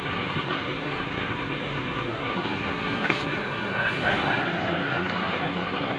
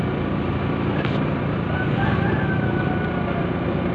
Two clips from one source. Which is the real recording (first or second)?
second